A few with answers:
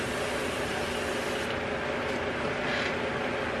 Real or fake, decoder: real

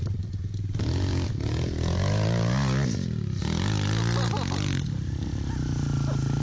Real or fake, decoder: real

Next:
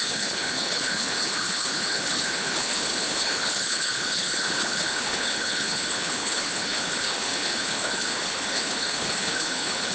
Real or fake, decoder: fake, codec, HILCodec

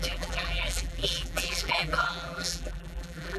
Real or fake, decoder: fake, vocoder, BigVGAN v2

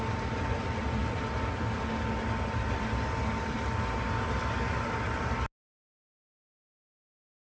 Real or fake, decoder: real